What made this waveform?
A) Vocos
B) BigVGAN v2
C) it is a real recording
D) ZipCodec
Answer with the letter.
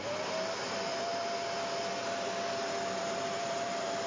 B